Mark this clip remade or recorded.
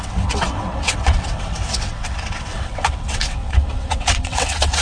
remade